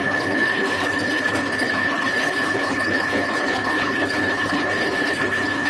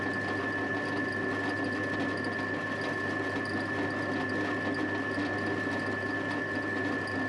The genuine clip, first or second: second